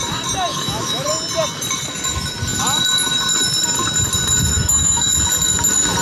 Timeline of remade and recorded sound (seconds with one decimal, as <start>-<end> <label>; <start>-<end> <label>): 0.0-0.5 recorded; 0.5-1.1 remade; 1.1-4.5 recorded; 4.5-5.1 remade; 5.1-6.0 recorded

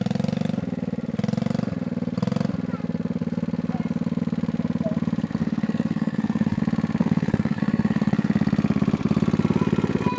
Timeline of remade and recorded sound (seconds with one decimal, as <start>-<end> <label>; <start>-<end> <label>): 0.0-5.4 recorded; 5.4-6.6 remade; 6.6-7.0 recorded; 7.0-8.3 remade; 8.3-10.2 recorded

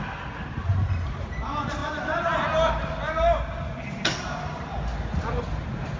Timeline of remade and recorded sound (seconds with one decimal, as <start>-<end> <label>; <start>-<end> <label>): 0.0-6.0 recorded

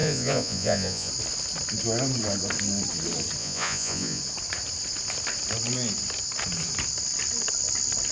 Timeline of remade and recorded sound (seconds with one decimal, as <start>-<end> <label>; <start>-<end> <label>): 0.0-1.1 remade; 1.1-3.4 recorded; 3.4-4.2 remade; 4.2-8.1 recorded

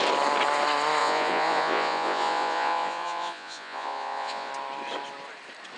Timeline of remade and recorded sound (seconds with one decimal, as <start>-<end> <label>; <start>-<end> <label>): 0.0-1.0 recorded; 1.0-4.5 remade; 4.5-5.8 recorded

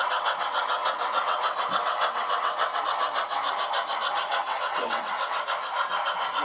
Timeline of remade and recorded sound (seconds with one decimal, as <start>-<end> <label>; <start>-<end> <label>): 0.0-0.8 recorded; 0.8-2.8 remade; 2.8-4.4 recorded; 4.4-5.4 remade; 5.4-6.4 recorded

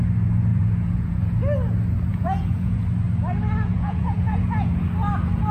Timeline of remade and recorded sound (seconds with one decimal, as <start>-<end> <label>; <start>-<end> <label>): 0.0-0.5 recorded; 0.5-1.4 remade; 1.4-2.1 recorded; 2.1-2.8 remade; 2.8-3.7 recorded; 3.7-4.7 remade; 4.7-5.5 recorded

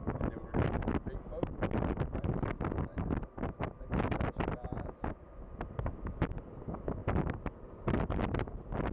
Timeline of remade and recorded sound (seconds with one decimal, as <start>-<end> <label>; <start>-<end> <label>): 0.0-8.9 recorded